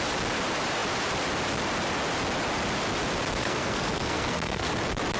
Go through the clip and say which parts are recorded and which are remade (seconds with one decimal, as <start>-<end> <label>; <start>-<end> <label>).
0.0-3.4 recorded; 3.4-4.7 remade; 4.7-5.2 recorded